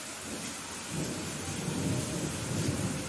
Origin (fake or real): real